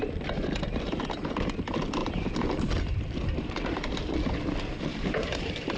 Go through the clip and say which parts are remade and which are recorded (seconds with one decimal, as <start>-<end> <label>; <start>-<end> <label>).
0.0-2.0 recorded; 2.0-3.9 remade; 3.9-4.9 recorded; 4.9-5.8 remade